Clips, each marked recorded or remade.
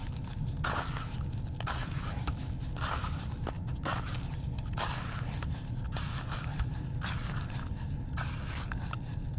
recorded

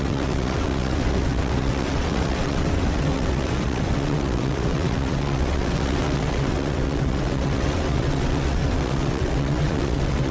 remade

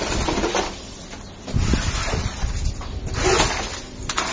recorded